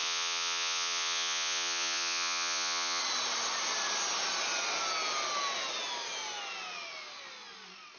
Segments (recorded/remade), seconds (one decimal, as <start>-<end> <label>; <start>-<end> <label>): 0.0-3.0 remade; 3.0-8.0 recorded